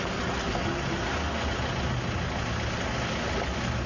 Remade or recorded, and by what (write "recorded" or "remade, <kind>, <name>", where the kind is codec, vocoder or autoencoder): recorded